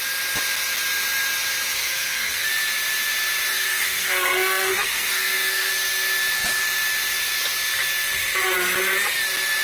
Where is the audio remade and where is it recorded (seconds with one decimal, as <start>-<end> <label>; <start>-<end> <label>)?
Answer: 0.0-1.7 recorded; 1.7-2.5 remade; 2.5-3.5 recorded; 3.5-5.7 remade; 5.7-9.6 recorded